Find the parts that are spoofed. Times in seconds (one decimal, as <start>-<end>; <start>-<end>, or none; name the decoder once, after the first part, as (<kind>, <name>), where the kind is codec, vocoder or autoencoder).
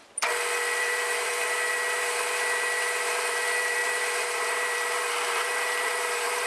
0.8-6.5 (vocoder, BigVGAN v2)